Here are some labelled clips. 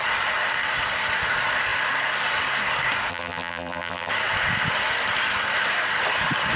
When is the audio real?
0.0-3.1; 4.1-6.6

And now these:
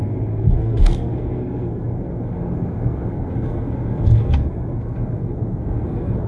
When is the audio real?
none

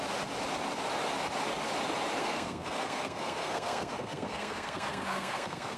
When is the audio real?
0.0-2.2

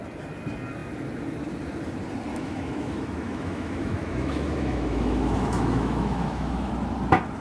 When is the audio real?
0.0-2.3; 6.7-7.4

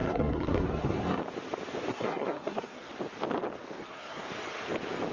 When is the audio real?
1.2-1.9; 2.9-3.6; 4.3-5.1

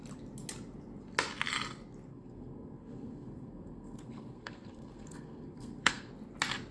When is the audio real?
0.0-2.1; 6.1-6.7

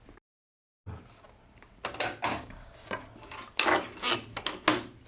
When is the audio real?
0.0-2.3; 2.9-5.1

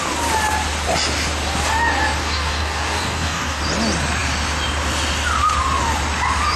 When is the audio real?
0.0-2.2; 3.6-6.6